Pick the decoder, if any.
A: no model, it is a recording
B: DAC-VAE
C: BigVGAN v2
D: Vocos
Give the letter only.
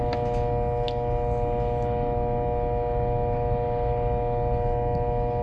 A